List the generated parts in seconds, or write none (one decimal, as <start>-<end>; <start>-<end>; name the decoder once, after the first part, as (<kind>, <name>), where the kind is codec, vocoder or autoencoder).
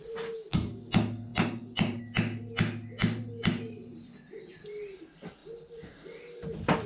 1.3-2.0 (vocoder, BigVGAN v2); 3.0-4.4